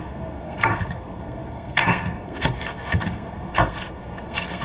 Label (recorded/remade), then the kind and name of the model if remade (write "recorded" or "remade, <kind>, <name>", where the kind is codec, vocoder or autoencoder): remade, codec, SNAC